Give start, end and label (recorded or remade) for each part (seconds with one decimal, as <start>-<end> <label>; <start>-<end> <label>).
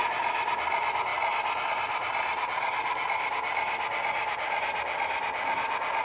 0.0-6.0 recorded